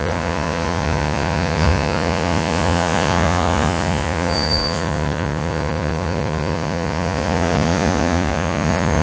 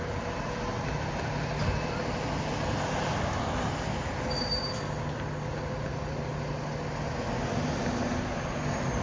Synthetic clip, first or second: first